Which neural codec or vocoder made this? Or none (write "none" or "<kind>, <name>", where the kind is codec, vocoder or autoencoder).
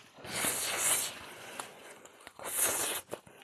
vocoder, Vocos